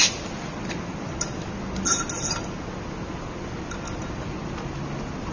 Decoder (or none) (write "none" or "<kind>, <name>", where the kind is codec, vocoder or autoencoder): none